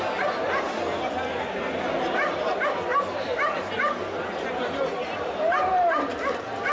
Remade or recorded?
recorded